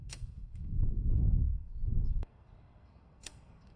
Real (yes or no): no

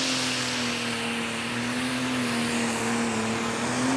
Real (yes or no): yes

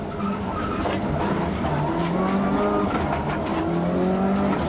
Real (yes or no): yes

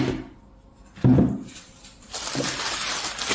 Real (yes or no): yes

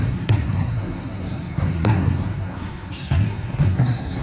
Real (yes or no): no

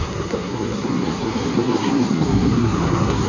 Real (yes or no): no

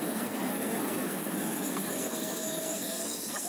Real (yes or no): no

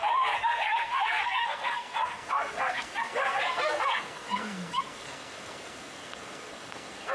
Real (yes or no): no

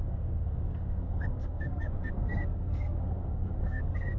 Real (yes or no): no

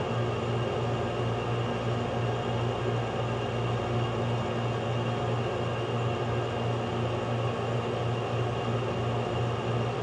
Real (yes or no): yes